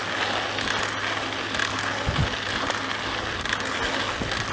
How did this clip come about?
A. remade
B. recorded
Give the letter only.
B